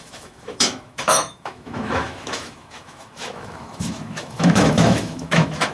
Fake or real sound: fake